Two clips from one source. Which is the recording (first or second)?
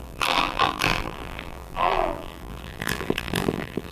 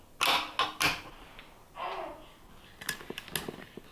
second